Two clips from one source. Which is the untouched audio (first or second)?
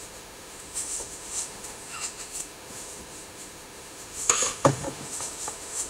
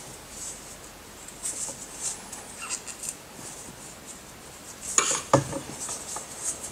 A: second